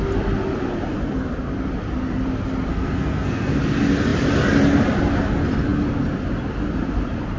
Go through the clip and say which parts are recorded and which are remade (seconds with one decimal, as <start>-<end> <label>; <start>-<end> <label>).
0.0-2.7 recorded; 2.7-3.6 remade; 3.6-7.4 recorded